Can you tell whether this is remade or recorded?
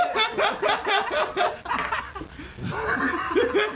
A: recorded